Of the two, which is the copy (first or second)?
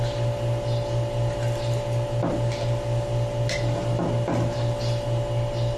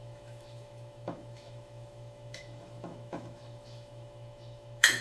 second